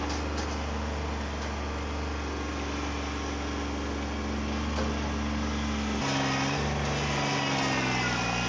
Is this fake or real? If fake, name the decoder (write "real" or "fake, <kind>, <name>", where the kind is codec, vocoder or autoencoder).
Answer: real